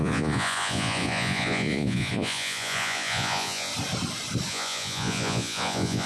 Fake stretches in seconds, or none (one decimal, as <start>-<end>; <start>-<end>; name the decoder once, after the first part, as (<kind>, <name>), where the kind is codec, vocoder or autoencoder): 0.0-3.7 (vocoder, Vocos); 4.5-6.1